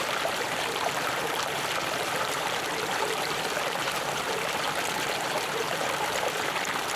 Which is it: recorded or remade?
remade